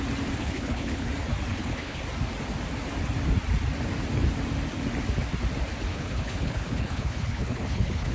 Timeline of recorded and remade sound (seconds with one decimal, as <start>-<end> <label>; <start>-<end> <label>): 0.0-0.4 recorded; 0.4-1.1 remade; 1.1-1.5 recorded; 1.5-2.0 remade; 2.0-5.9 recorded; 5.9-8.1 remade